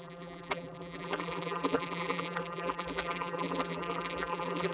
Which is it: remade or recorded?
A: remade